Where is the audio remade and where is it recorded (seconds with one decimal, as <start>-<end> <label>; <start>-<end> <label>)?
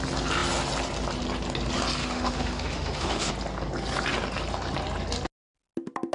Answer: 0.0-2.0 recorded; 2.0-3.3 remade; 3.3-6.1 recorded